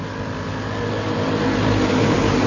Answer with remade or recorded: recorded